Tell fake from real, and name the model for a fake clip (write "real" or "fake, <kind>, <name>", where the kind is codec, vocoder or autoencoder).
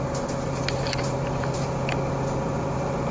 real